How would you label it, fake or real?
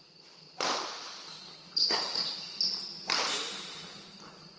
real